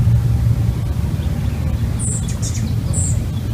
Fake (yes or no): no